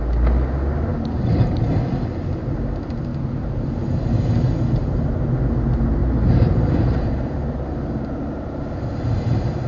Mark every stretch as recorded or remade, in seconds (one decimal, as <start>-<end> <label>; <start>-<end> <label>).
0.0-3.1 recorded; 3.1-4.3 remade; 4.3-6.0 recorded; 6.0-8.4 remade; 8.4-9.7 recorded